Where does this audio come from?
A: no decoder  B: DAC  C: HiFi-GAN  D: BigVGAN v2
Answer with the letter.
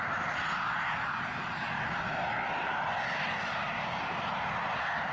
A